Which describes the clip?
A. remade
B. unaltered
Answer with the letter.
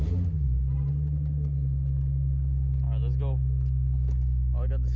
B